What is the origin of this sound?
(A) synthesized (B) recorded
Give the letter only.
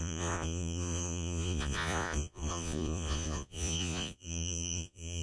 A